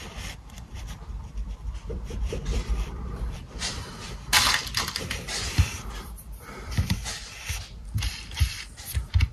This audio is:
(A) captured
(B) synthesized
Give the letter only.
B